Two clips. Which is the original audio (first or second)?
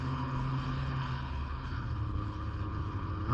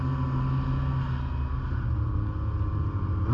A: second